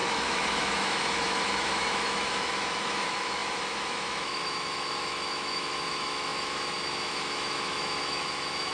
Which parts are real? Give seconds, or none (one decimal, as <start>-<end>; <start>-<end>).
none

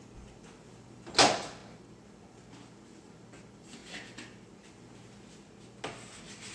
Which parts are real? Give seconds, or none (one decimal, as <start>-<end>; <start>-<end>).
0.0-6.5

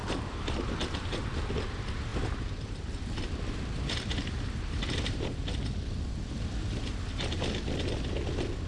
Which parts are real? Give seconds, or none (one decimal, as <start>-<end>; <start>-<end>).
1.5-2.1; 5.4-8.7

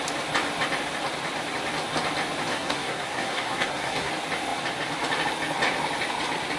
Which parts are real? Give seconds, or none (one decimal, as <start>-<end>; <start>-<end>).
0.0-2.5; 4.1-6.6

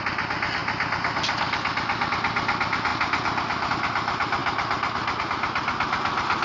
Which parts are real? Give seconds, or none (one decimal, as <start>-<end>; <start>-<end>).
0.0-2.9; 3.7-6.4